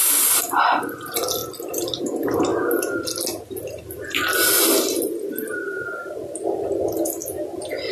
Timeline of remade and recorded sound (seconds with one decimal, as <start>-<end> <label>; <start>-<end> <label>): 0.0-7.9 recorded